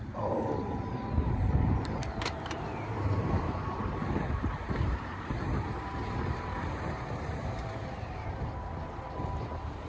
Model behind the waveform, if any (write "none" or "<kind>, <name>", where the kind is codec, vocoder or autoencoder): vocoder, BigVGAN v2